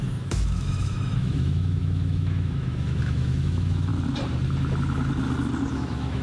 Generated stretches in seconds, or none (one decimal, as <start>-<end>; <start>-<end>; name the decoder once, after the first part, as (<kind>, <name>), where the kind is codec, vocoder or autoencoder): 0.0-3.9 (autoencoder, DAC-VAE); 5.7-6.2